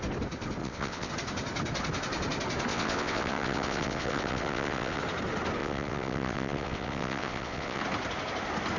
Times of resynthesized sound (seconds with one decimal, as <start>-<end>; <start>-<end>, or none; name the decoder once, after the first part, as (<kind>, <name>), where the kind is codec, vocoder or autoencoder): 0.6-1.1 (vocoder, WaveNeXt); 2.7-5.0; 5.6-7.8